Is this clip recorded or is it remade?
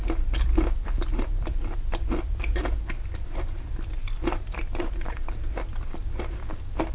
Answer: remade